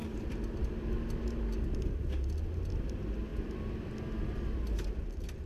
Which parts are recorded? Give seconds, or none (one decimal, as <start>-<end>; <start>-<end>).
0.7-5.5

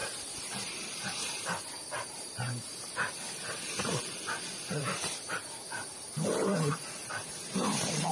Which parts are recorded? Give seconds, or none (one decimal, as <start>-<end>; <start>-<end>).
4.0-4.7

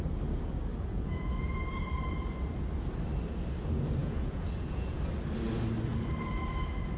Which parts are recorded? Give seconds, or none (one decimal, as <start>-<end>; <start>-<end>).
0.0-0.7; 1.3-4.0; 5.0-7.0

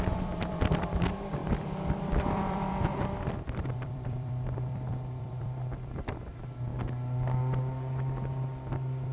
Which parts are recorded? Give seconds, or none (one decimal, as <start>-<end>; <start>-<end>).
6.7-8.7

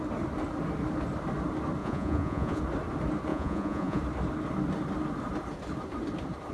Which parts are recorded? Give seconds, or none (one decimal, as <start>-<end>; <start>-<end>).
0.0-1.8; 2.6-3.3; 4.0-6.5

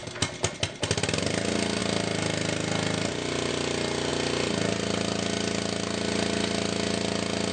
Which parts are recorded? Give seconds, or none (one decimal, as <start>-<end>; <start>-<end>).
0.0-7.5